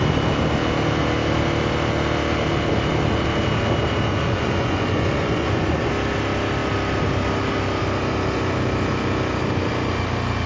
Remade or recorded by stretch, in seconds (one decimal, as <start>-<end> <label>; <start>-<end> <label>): 0.0-4.1 recorded; 4.1-5.9 remade; 5.9-10.5 recorded